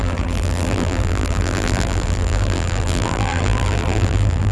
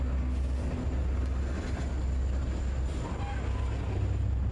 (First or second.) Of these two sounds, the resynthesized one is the first